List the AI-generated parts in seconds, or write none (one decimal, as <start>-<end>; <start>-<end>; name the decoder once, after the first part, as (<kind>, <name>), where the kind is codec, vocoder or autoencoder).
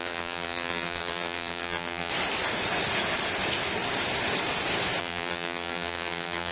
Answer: 0.0-2.1 (vocoder, BigVGAN v2); 5.0-6.5